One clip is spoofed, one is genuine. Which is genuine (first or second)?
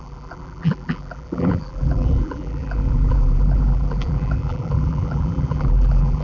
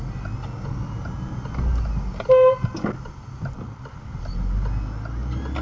second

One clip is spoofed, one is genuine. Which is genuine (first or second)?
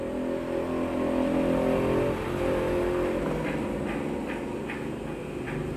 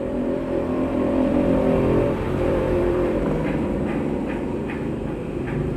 first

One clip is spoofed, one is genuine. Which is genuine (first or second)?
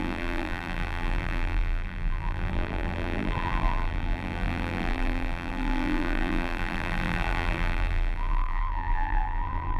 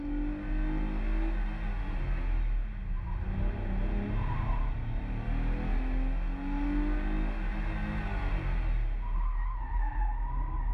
second